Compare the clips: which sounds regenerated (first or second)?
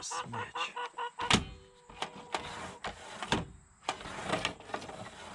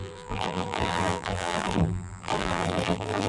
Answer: second